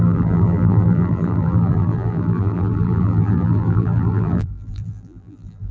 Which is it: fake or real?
fake